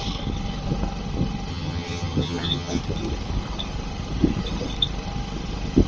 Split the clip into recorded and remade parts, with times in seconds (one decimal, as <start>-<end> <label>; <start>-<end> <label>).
0.0-1.5 recorded; 1.5-2.8 remade; 2.8-5.9 recorded